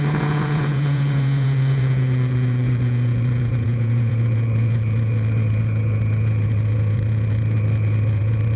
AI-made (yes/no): yes